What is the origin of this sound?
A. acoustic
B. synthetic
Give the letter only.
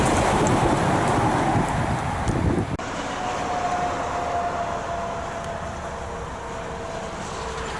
A